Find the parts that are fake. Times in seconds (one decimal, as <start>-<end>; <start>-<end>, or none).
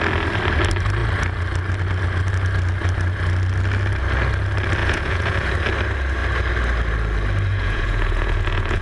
4.8-5.5; 7.5-8.8